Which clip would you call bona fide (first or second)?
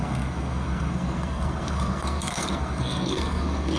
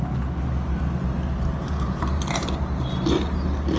second